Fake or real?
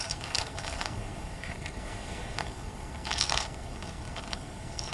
fake